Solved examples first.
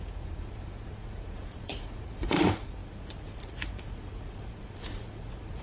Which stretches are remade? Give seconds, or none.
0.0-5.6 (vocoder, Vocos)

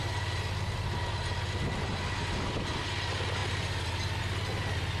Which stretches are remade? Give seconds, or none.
none

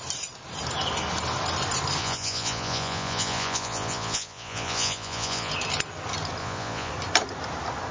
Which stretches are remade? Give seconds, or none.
2.0-5.5 (vocoder, Vocos); 6.4-6.9

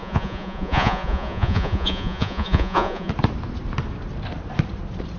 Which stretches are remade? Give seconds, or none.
0.0-3.1 (vocoder, Vocos)

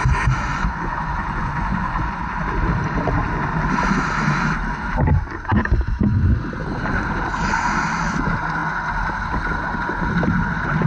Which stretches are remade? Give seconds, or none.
0.5-2.2 (vocoder, Vocos)

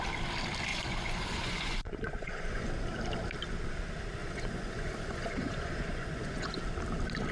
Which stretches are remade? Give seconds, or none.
0.7-2.7 (vocoder, Vocos); 4.2-6.6

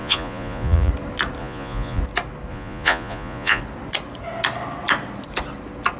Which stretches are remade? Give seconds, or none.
0.0-0.9 (vocoder, Vocos); 1.4-2.0; 2.5-3.6

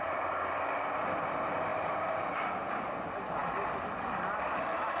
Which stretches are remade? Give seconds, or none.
none